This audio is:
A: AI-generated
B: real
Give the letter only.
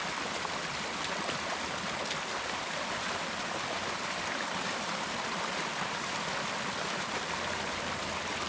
B